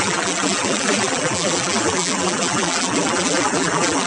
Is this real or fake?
fake